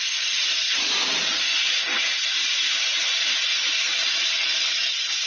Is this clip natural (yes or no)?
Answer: yes